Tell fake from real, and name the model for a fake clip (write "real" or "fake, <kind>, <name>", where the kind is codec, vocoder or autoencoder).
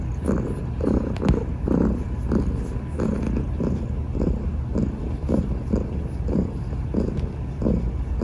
real